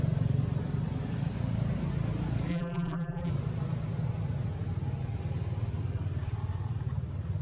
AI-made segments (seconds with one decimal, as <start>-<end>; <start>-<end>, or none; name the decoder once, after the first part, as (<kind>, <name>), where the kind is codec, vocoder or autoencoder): 2.5-3.3 (vocoder, BigVGAN v2)